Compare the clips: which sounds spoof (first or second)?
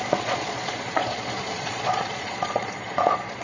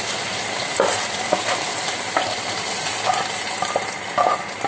first